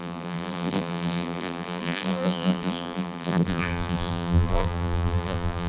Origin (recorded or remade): remade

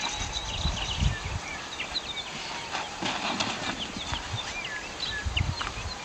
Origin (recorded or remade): recorded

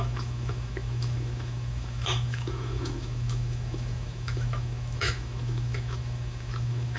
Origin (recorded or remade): remade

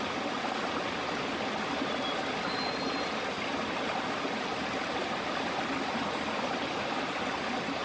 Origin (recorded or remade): recorded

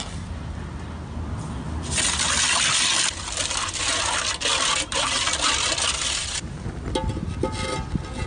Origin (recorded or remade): recorded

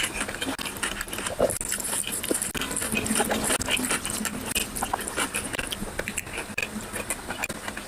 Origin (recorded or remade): recorded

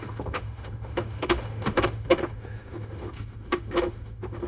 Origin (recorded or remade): remade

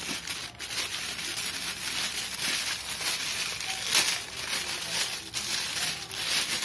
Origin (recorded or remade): recorded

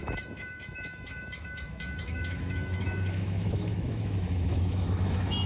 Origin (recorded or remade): remade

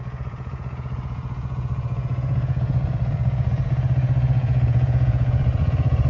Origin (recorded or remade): remade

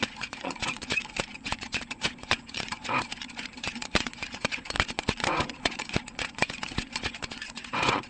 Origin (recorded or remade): remade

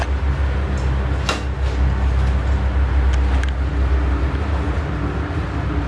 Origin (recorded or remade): recorded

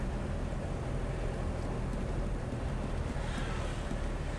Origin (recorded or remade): recorded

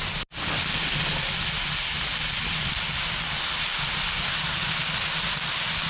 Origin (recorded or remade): recorded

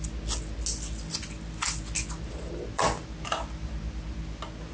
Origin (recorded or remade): recorded